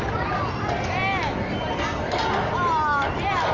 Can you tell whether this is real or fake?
real